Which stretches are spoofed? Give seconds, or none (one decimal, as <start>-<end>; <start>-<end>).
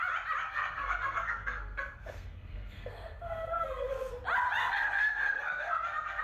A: 0.4-4.1; 4.6-6.2